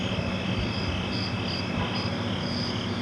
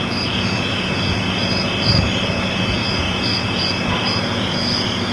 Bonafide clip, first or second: first